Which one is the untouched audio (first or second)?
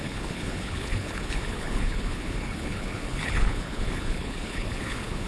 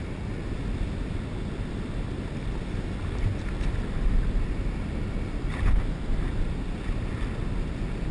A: second